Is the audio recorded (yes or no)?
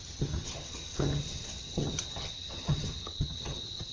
no